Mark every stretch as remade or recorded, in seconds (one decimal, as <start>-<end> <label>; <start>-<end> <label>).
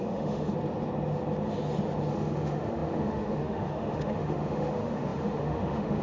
0.0-0.5 remade; 0.5-2.1 recorded; 2.1-6.0 remade